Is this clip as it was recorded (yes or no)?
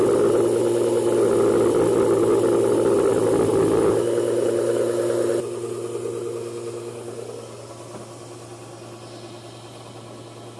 yes